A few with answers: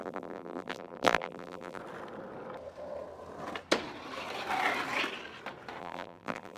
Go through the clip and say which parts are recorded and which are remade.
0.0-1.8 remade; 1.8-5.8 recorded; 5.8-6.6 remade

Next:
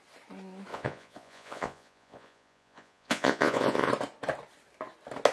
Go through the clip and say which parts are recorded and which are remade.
0.0-0.7 recorded; 0.7-3.9 remade; 3.9-5.3 recorded

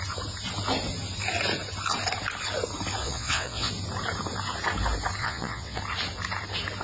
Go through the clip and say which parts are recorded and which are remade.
0.0-3.0 recorded; 3.0-3.7 remade; 3.7-5.2 recorded; 5.2-5.8 remade; 5.8-6.8 recorded

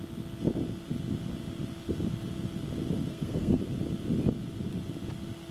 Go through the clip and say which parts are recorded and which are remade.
0.0-3.1 recorded; 3.1-3.6 remade; 3.6-5.5 recorded

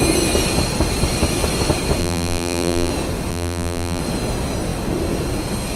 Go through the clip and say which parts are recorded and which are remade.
0.0-2.0 recorded; 2.0-2.9 remade; 2.9-3.3 recorded; 3.3-4.0 remade; 4.0-5.8 recorded

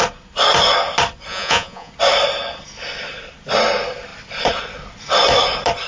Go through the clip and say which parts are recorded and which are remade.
0.0-1.3 recorded; 1.3-1.9 remade; 1.9-5.9 recorded